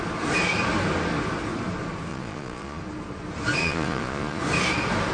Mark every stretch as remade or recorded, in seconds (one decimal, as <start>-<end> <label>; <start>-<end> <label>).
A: 0.0-2.1 recorded; 2.1-2.8 remade; 2.8-3.6 recorded; 3.6-4.4 remade; 4.4-5.1 recorded